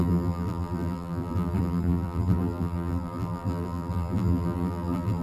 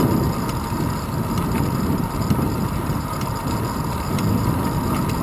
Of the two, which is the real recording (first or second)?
second